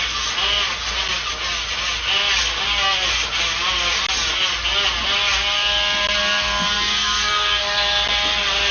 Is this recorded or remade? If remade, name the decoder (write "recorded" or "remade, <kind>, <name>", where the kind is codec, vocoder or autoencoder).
recorded